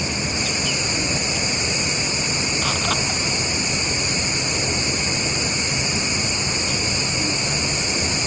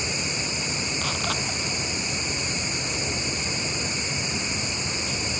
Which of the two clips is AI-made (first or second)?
second